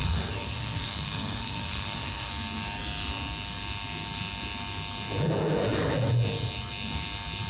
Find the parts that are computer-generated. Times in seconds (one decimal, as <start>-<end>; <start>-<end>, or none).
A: 0.0-2.3